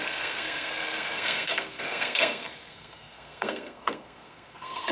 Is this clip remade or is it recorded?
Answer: remade